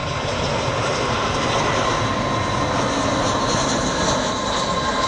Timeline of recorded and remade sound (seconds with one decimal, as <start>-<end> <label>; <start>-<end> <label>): 0.0-5.1 recorded